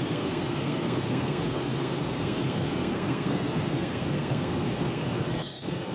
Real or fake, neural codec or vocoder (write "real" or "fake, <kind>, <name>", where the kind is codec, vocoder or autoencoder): fake, codec, SNAC